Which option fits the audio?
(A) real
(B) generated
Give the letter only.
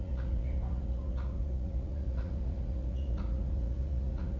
B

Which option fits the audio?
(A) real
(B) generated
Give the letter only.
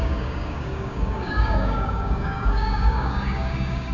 B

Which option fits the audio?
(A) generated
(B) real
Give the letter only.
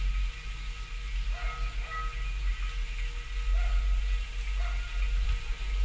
B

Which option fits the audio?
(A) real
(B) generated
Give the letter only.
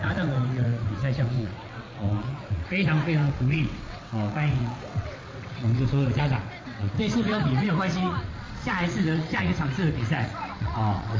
B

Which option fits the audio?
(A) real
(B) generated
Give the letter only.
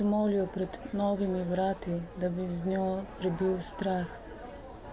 A